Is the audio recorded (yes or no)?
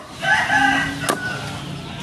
yes